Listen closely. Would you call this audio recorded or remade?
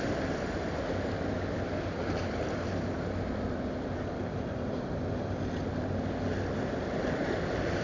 recorded